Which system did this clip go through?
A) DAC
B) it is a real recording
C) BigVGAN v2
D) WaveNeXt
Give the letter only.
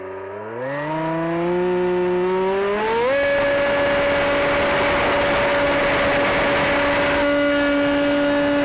B